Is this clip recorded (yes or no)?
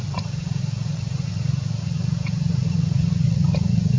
no